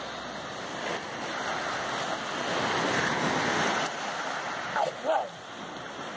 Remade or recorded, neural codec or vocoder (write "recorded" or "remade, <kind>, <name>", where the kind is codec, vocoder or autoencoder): recorded